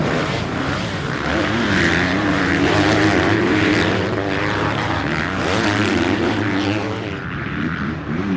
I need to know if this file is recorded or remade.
remade